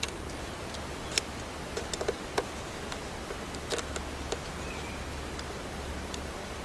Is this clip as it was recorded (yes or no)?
yes